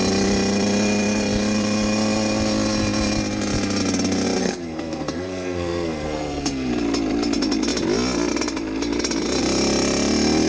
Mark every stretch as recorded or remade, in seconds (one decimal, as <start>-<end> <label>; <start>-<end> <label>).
0.0-4.4 recorded; 4.4-6.7 remade; 6.7-10.5 recorded